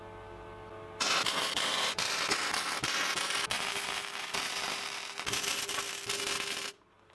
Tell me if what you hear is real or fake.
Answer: real